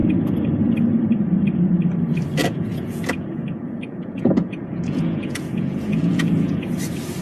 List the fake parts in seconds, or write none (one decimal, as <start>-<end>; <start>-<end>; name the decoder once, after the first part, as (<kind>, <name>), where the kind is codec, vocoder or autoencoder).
2.4-6.7 (vocoder, Vocos)